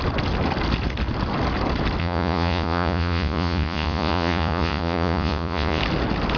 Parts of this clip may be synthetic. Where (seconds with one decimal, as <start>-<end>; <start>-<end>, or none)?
2.0-5.8